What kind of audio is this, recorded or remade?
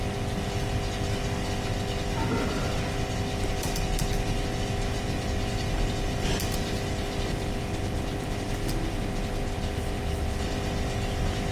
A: recorded